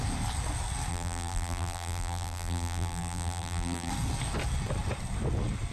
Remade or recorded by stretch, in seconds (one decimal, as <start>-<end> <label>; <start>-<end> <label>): 0.0-0.9 recorded; 0.9-3.9 remade; 3.9-5.7 recorded